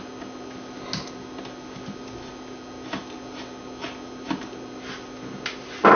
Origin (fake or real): real